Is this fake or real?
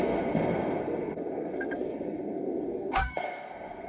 fake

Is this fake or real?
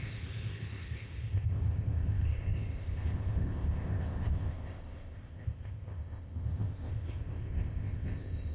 fake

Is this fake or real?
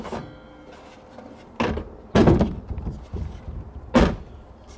real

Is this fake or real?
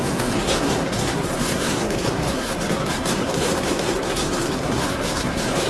fake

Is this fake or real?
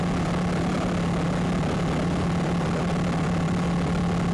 real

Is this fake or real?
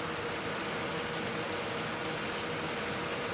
real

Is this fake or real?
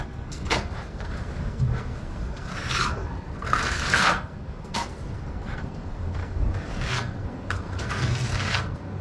fake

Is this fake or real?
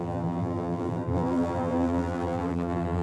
fake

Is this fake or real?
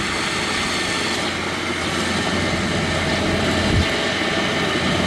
real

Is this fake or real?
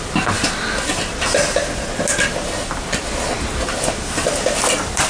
real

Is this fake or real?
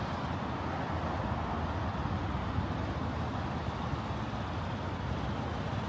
real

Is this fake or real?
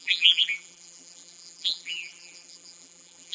fake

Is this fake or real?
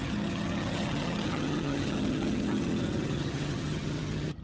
fake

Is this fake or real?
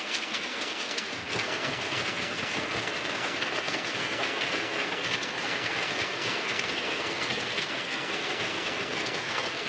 fake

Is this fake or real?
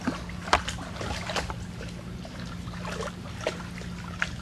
real